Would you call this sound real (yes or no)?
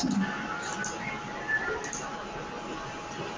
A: yes